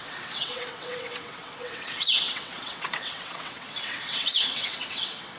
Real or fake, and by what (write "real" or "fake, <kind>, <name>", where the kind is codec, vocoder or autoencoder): fake, vocoder, WaveNeXt